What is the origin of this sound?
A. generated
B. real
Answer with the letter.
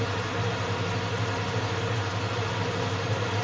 B